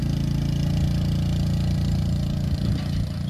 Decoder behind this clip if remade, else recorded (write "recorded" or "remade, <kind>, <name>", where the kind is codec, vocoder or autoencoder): recorded